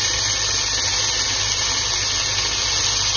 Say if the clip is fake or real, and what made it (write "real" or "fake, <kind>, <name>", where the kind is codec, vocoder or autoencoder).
real